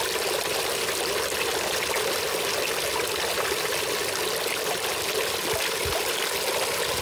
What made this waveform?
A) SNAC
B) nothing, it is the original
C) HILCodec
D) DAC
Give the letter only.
B